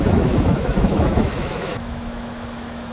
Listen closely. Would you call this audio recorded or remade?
remade